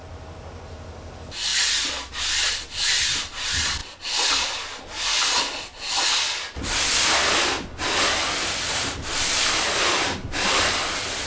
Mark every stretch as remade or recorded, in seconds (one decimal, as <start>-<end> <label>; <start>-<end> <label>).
0.0-11.3 recorded